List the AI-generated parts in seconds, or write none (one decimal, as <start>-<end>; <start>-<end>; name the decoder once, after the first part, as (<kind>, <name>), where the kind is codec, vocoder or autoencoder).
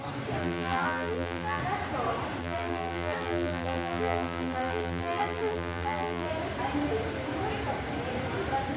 0.4-1.6 (vocoder, BigVGAN v2); 2.4-6.3